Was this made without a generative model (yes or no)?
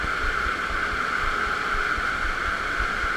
yes